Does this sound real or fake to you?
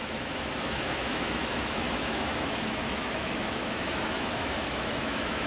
fake